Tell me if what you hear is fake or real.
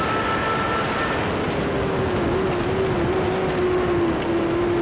real